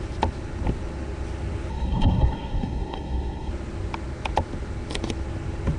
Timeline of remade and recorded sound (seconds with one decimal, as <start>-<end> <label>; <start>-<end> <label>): 0.0-1.7 recorded; 1.7-3.5 remade; 3.5-5.8 recorded